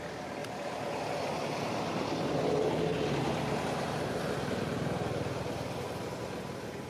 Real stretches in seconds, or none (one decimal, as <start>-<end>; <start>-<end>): 0.0-2.9; 4.2-6.9